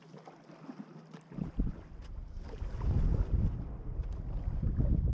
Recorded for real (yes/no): yes